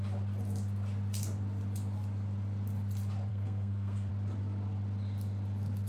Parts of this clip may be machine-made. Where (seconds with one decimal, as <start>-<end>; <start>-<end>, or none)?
3.3-4.1